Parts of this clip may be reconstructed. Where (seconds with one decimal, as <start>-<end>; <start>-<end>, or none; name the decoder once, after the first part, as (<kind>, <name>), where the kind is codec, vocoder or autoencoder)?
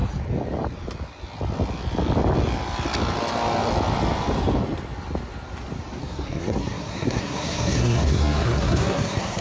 6.0-9.4 (codec, SNAC)